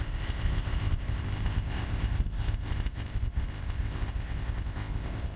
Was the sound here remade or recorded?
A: remade